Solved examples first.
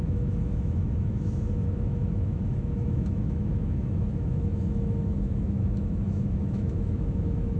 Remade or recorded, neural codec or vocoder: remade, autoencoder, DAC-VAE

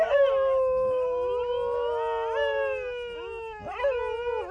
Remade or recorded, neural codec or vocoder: recorded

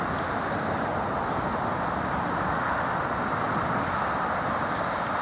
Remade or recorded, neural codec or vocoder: recorded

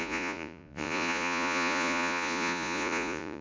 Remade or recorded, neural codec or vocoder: remade, vocoder, Vocos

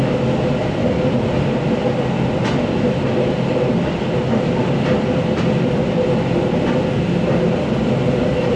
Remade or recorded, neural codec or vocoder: recorded